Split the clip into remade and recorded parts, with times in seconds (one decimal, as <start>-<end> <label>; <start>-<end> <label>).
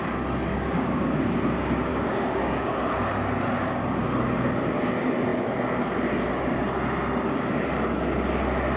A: 0.0-0.5 recorded; 0.5-1.3 remade; 1.3-1.9 recorded; 1.9-2.7 remade; 2.7-8.8 recorded